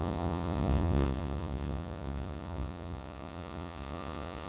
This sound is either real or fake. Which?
fake